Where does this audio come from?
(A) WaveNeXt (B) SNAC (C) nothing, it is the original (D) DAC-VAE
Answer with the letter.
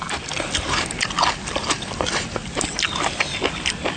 C